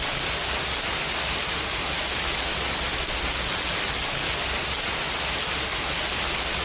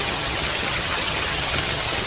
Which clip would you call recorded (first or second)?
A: first